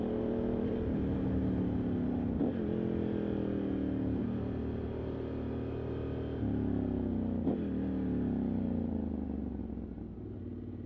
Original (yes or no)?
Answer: yes